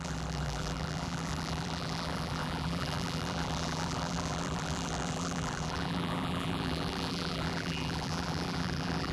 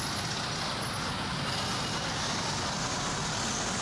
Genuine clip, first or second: second